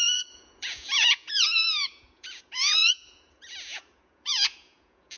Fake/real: fake